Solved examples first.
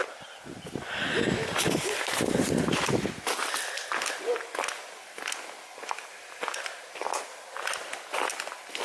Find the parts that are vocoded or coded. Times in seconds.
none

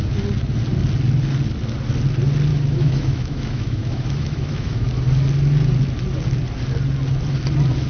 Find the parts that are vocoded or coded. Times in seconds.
2.5-4.9 (autoencoder, DAC-VAE)

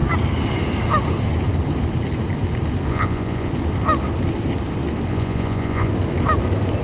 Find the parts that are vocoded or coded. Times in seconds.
2.9-3.5 (vocoder, Vocos); 5.1-5.9

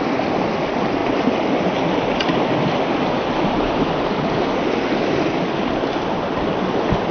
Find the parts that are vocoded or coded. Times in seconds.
none

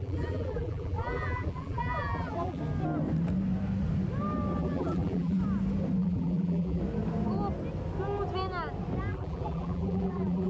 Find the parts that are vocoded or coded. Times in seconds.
0.0-2.6 (vocoder, BigVGAN v2); 4.6-5.4; 6.0-6.8; 9.1-10.5

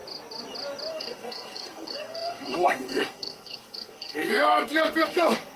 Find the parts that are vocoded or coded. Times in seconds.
0.9-5.6 (codec, SNAC)

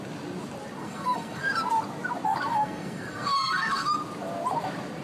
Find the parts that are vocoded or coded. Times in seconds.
0.8-1.5 (codec, SNAC); 2.5-3.9